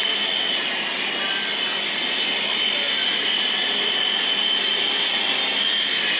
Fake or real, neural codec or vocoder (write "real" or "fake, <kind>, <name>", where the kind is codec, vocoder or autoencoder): real